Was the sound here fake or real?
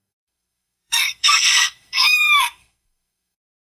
fake